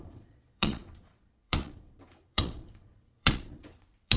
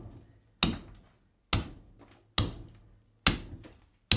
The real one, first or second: second